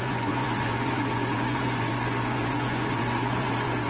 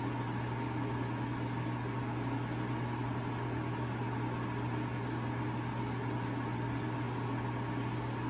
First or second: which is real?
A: second